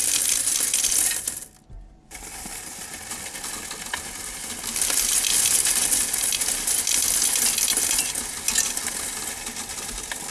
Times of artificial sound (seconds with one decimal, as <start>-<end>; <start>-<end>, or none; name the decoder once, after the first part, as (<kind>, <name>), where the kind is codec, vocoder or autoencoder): none

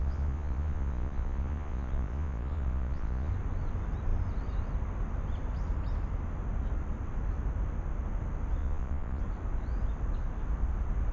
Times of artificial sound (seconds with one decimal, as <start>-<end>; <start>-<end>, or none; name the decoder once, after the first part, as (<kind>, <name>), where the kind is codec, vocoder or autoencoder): 0.0-3.3 (vocoder, Vocos); 8.6-9.2

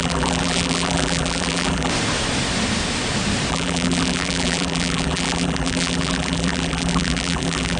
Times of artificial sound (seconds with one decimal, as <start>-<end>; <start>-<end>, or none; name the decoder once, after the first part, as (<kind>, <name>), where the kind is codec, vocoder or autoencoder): 0.0-1.9 (vocoder, BigVGAN v2); 3.5-7.8